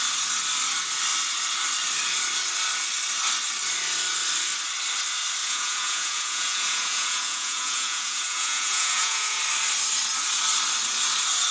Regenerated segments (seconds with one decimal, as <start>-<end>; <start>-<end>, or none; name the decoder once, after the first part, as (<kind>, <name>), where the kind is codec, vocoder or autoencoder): 5.4-9.4 (vocoder, Vocos)

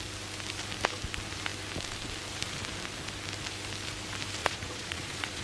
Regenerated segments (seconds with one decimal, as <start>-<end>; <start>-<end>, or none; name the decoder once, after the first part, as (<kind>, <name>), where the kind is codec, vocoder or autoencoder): 4.4-5.4 (vocoder, Vocos)

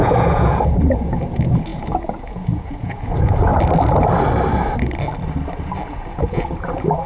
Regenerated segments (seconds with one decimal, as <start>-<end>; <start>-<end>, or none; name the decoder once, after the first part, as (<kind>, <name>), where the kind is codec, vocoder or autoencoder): 0.0-3.5 (vocoder, Vocos); 5.9-7.1

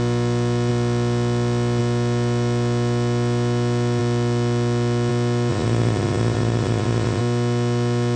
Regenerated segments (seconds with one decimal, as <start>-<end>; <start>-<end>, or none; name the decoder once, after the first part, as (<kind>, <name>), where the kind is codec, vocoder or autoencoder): 5.5-7.2 (vocoder, Vocos)

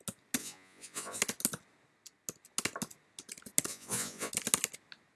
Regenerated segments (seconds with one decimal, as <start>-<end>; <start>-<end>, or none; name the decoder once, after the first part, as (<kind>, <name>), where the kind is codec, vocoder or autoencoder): 0.4-1.2 (vocoder, Vocos); 3.7-4.3

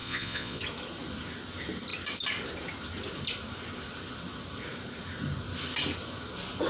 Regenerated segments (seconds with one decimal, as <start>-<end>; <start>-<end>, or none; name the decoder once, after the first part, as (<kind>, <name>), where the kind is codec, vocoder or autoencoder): 0.0-0.6 (vocoder, Vocos)

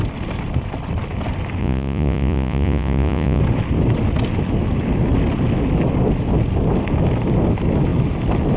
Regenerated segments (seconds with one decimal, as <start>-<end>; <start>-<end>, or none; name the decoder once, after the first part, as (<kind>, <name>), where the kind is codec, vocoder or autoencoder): 1.6-3.4 (vocoder, Vocos)